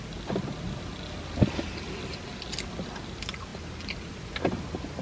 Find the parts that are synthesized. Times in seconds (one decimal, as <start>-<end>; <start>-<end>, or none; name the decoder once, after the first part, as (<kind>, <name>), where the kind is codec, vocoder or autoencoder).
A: none